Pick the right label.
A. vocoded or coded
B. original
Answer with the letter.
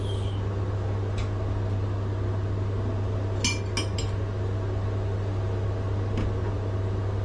B